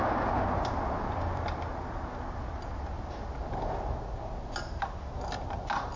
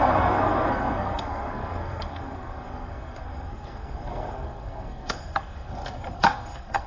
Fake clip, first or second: second